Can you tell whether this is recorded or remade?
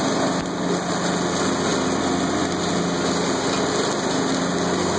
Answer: recorded